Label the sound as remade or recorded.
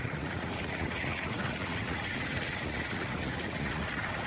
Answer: remade